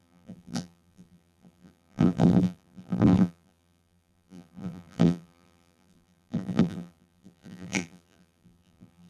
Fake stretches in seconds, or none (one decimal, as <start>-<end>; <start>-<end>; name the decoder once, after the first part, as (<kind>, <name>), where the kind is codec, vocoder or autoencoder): 0.0-9.1 (vocoder, BigVGAN v2)